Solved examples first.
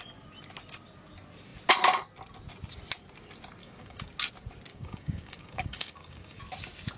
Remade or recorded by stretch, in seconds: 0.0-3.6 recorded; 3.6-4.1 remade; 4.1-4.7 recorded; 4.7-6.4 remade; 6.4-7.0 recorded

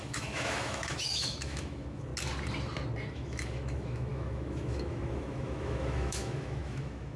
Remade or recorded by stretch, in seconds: 0.0-2.1 remade; 2.1-3.1 recorded; 3.1-7.2 remade

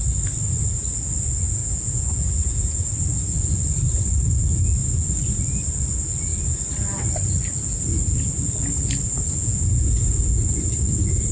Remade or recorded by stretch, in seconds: 0.0-1.6 recorded; 1.6-2.9 remade; 2.9-9.4 recorded; 9.4-10.4 remade; 10.4-11.3 recorded

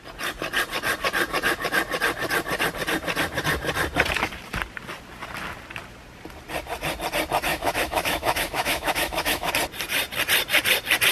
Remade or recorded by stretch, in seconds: 0.0-7.5 recorded; 7.5-9.5 remade; 9.5-11.1 recorded

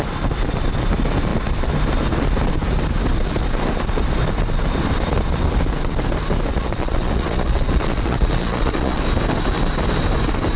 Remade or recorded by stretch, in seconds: 0.0-6.5 recorded; 6.5-9.0 remade; 9.0-10.6 recorded

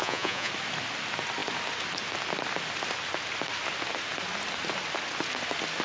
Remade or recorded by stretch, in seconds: 0.0-0.5 remade; 0.5-5.8 recorded

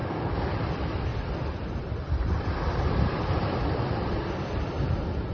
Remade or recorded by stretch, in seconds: 0.0-0.7 remade; 0.7-1.1 recorded; 1.1-4.2 remade; 4.2-5.3 recorded